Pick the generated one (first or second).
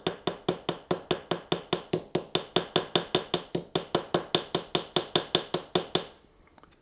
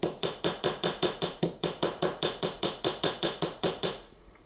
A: second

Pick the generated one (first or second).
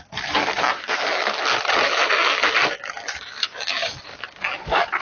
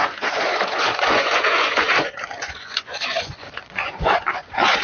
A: second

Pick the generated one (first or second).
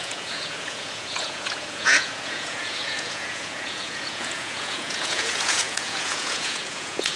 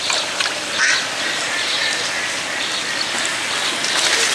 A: first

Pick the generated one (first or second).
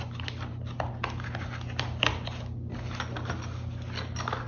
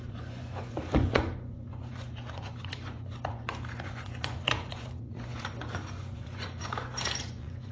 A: second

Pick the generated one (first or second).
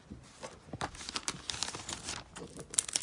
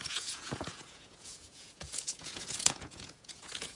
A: second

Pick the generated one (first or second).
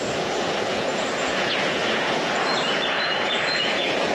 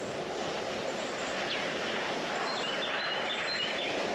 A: first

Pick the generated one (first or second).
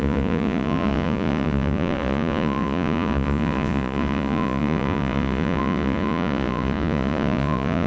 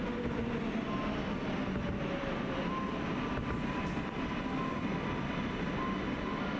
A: first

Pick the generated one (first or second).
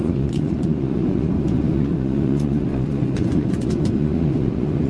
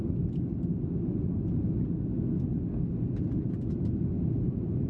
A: first